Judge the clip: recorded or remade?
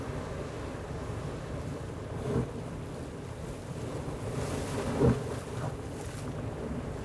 recorded